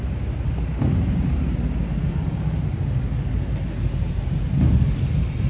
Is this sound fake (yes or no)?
no